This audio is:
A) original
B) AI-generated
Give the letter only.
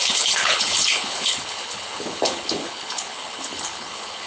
B